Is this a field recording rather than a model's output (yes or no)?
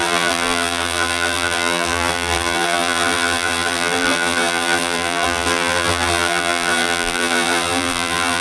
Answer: no